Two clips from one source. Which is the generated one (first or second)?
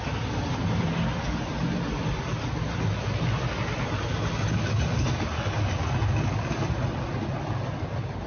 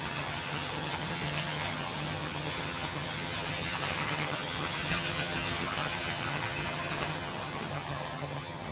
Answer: second